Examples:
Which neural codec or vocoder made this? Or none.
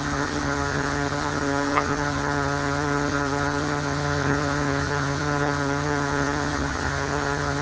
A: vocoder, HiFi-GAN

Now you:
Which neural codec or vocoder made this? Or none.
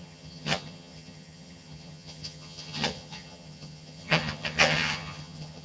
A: vocoder, HiFi-GAN